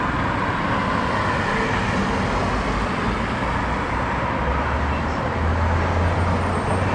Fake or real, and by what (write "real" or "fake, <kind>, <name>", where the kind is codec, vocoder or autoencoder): real